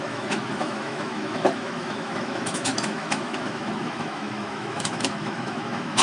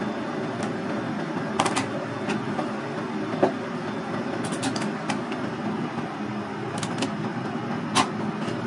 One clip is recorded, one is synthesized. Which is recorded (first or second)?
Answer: second